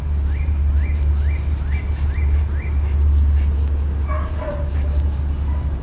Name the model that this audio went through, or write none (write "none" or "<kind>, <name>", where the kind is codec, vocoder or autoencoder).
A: none